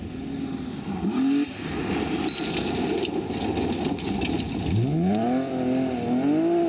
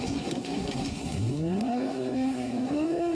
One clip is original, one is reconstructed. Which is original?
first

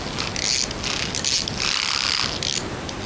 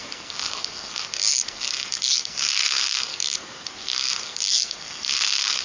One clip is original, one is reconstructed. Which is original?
first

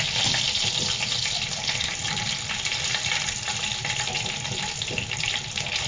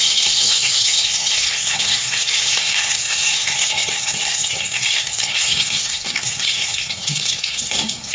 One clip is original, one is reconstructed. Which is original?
first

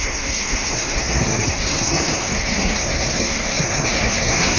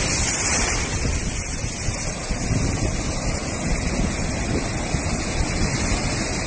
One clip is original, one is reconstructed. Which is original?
second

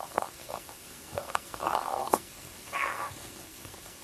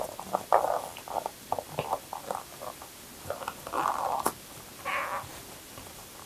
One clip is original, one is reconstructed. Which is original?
second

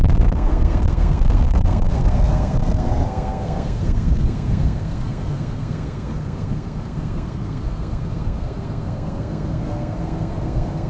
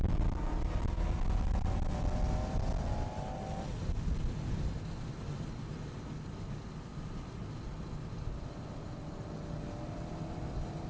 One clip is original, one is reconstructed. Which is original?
second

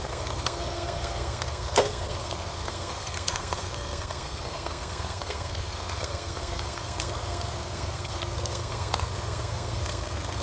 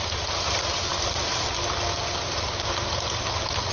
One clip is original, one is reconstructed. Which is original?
second